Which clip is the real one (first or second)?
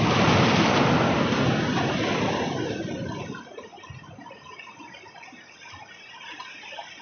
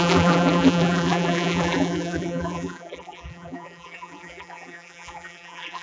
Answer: first